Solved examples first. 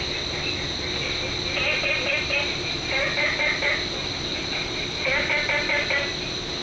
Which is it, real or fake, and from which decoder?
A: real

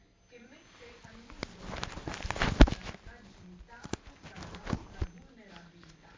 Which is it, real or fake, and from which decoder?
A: real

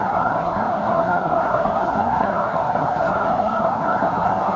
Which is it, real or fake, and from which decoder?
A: fake, codec, SNAC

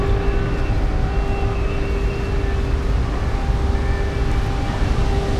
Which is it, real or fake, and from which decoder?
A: real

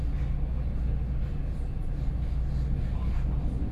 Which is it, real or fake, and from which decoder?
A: real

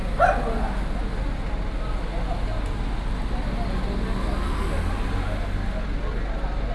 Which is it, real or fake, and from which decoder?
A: real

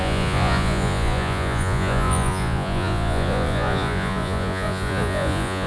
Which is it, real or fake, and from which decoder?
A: fake, vocoder, Vocos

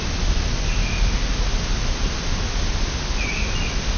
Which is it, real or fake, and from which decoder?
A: real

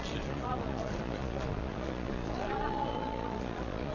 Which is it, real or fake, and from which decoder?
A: fake, vocoder, Vocos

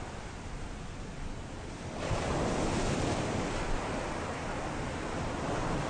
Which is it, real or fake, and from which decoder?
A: real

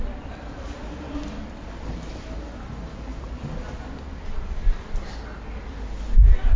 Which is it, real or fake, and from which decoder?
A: real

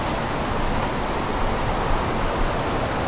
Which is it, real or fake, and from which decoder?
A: real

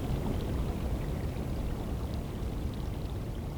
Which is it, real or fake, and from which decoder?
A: real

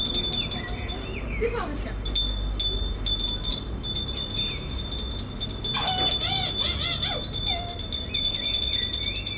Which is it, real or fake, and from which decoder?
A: real